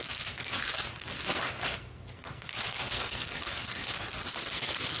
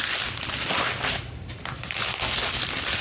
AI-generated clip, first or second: first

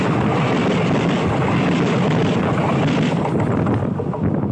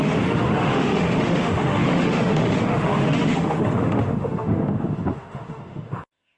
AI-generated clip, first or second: second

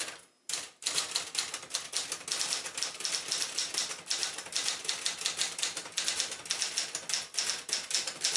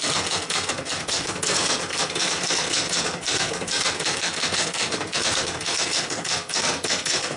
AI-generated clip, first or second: second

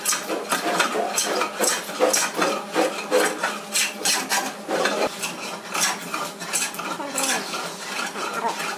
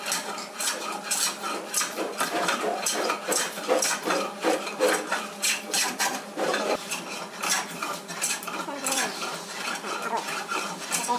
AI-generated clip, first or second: second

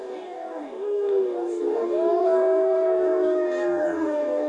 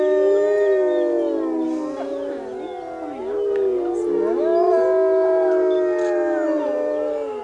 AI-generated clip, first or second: first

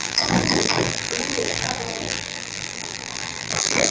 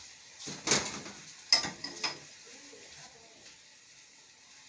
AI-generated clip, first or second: first